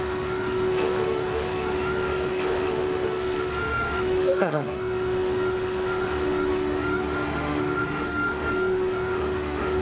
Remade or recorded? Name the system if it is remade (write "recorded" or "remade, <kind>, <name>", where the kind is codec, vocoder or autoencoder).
remade, autoencoder, DAC-VAE